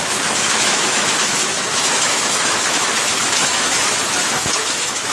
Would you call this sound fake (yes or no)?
yes